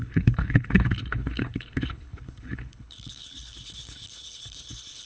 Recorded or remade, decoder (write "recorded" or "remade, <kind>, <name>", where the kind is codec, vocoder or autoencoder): remade, codec, HILCodec